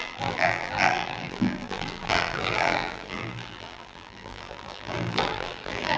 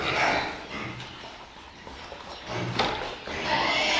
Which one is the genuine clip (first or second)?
second